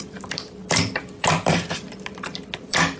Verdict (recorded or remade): remade